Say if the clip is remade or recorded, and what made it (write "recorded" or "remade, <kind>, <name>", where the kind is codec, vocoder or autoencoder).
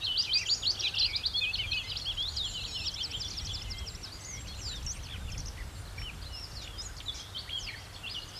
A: recorded